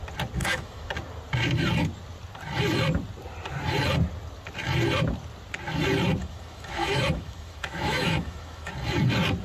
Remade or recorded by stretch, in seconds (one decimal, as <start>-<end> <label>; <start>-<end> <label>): 0.0-0.4 recorded; 0.4-0.9 remade; 0.9-6.2 recorded; 6.2-8.7 remade; 8.7-9.4 recorded